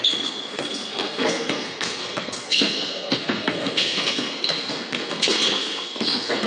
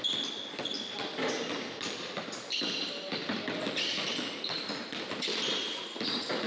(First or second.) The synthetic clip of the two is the first